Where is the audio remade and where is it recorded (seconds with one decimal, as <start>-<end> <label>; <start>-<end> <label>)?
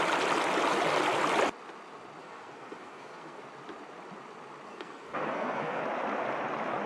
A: 0.0-2.2 recorded; 2.2-3.4 remade; 3.4-4.7 recorded; 4.7-5.8 remade; 5.8-6.9 recorded